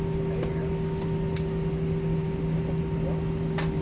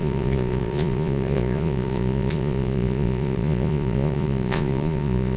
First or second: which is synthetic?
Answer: second